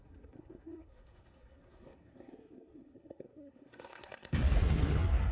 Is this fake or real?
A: fake